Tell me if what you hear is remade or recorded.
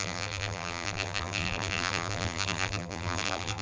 remade